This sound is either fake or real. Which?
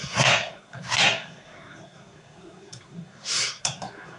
fake